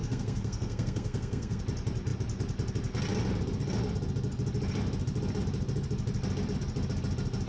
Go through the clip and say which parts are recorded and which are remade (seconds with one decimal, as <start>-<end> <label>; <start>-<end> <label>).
0.0-1.6 remade; 1.6-7.5 recorded